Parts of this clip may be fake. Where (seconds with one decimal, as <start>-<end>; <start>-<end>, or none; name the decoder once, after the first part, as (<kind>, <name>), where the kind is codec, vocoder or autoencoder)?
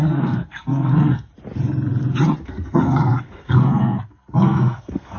0.0-1.3 (codec, SNAC); 2.4-5.2